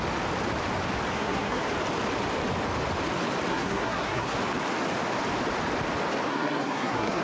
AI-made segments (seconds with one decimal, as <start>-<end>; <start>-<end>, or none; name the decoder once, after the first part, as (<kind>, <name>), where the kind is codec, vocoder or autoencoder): 1.1-1.6 (codec, SNAC); 3.5-4.4; 6.3-7.2